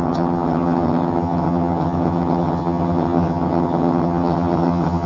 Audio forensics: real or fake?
fake